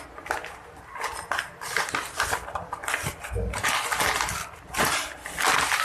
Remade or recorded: recorded